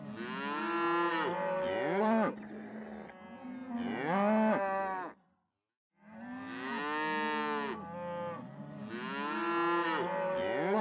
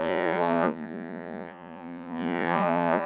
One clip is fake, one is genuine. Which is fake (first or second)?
second